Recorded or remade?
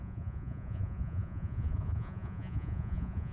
remade